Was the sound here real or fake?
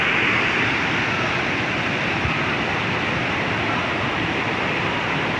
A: real